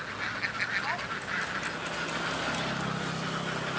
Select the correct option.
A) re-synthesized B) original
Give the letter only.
B